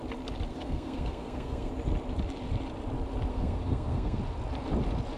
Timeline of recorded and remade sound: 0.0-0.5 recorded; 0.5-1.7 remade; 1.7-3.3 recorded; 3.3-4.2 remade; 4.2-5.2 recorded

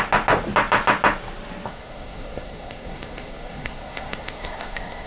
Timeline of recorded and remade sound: 0.0-1.7 recorded; 1.7-5.1 remade

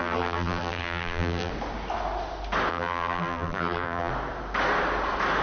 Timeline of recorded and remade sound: 0.0-1.5 remade; 1.5-2.7 recorded; 2.7-4.1 remade; 4.1-5.4 recorded

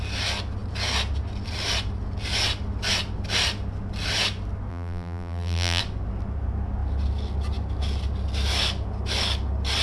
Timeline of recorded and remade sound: 0.0-4.7 recorded; 4.7-5.8 remade; 5.8-9.8 recorded

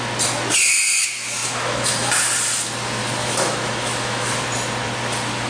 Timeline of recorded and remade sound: 0.0-1.4 recorded; 1.4-2.1 remade; 2.1-3.2 recorded; 3.2-4.3 remade; 4.3-5.5 recorded

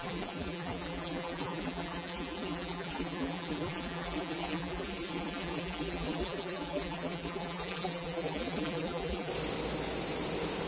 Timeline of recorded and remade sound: 0.0-9.3 remade; 9.3-10.7 recorded

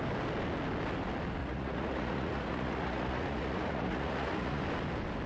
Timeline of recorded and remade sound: 0.0-1.4 recorded; 1.4-4.6 remade; 4.6-5.3 recorded

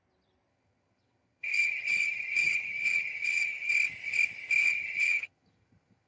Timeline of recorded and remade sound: 0.0-0.5 recorded; 0.5-3.7 remade; 3.7-4.6 recorded; 4.6-6.1 remade